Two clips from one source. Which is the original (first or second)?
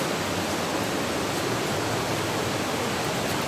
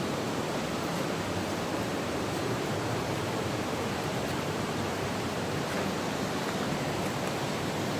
first